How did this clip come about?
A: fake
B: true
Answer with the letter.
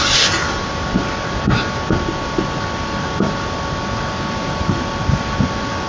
B